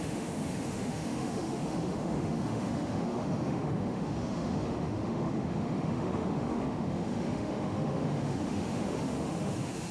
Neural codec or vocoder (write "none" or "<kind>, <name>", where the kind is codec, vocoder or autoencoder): autoencoder, DAC-VAE